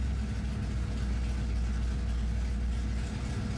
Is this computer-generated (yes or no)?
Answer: no